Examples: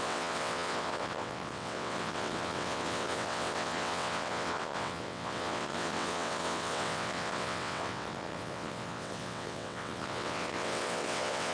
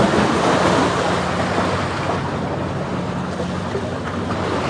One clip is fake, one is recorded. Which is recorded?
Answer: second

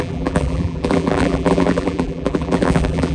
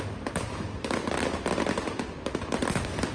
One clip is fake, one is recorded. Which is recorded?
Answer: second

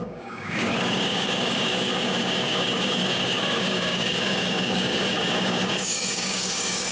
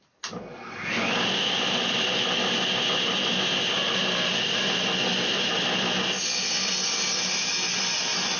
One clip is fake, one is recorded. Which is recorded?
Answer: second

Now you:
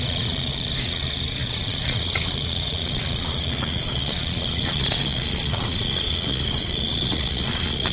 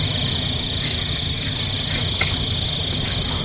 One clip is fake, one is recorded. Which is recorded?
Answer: second